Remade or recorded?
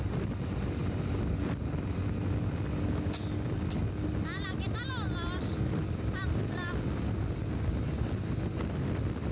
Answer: recorded